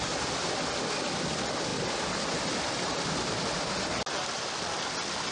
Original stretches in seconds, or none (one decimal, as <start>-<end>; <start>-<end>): 0.0-5.3